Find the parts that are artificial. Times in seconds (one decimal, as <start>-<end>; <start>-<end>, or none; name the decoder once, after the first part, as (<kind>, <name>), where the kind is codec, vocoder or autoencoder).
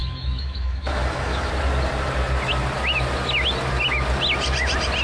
0.0-1.5 (autoencoder, DAC-VAE)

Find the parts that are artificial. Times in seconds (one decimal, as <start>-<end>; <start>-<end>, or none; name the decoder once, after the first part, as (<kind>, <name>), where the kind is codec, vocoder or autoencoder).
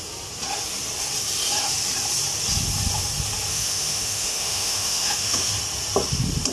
3.5-5.5 (autoencoder, DAC-VAE)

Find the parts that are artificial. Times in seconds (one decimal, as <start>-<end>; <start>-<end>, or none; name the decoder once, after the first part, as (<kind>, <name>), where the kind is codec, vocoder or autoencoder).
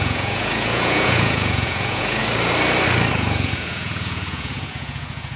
0.0-2.2 (vocoder, Vocos); 3.1-5.4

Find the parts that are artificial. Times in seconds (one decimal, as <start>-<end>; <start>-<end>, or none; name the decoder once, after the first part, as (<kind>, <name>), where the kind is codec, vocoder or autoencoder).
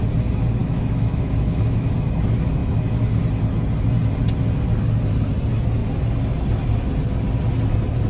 0.6-1.9 (autoencoder, DAC-VAE)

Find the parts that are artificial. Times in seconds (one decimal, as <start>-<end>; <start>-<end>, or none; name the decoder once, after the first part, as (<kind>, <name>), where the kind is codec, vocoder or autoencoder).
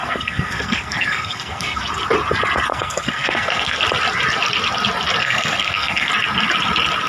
0.0-1.8 (codec, SNAC); 2.7-3.8; 5.2-6.1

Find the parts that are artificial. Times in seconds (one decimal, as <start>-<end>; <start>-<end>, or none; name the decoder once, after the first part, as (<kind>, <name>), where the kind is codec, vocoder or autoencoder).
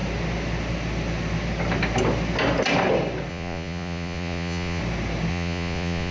3.3-4.8 (vocoder, Vocos); 5.3-6.1